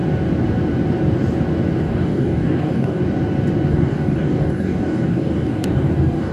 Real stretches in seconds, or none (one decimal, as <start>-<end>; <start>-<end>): 0.0-1.8; 3.0-3.7